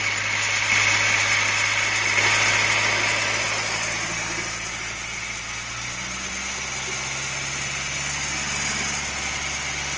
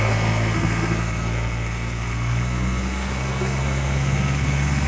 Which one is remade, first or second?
second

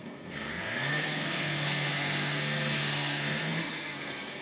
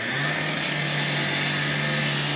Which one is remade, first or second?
first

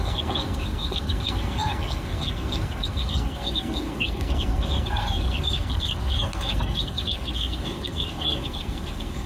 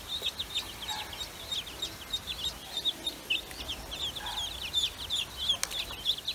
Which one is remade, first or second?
first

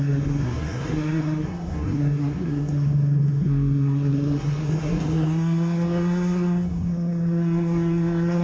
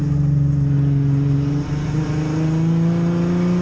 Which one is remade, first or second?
first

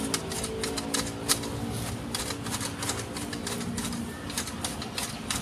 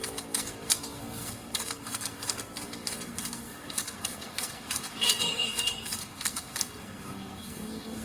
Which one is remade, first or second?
second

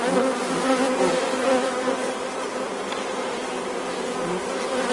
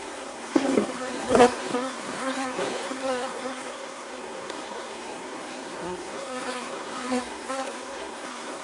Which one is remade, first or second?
second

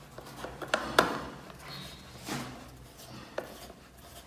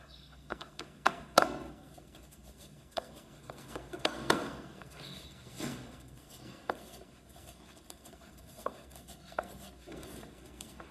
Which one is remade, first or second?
second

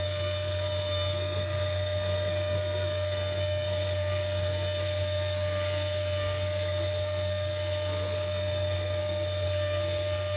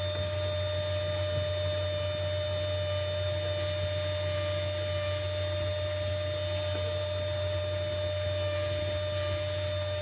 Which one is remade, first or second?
first